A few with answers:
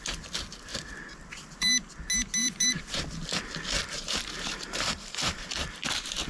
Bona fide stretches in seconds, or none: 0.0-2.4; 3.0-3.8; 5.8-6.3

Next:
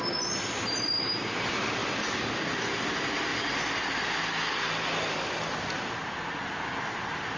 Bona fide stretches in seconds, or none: 0.0-7.4

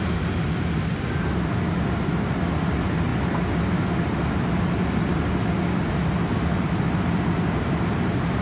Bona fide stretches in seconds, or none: 0.0-8.4

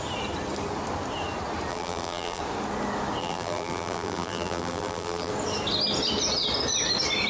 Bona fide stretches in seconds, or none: 0.0-1.7; 2.4-3.2; 5.3-7.3

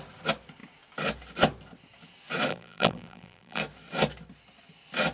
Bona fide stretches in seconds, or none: 0.0-2.5; 3.6-5.1